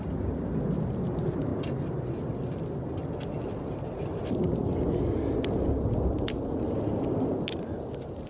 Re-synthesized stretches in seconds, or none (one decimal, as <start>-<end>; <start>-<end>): none